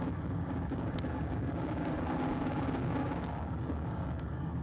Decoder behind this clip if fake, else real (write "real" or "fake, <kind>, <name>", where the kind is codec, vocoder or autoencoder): fake, codec, DAC